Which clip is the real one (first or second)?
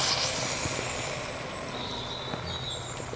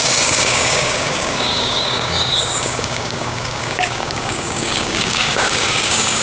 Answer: first